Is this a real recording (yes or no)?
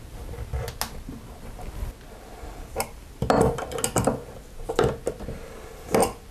yes